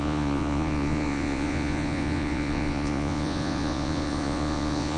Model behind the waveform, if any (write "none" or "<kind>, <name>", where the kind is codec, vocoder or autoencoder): vocoder, Vocos